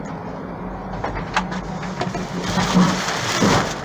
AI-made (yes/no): no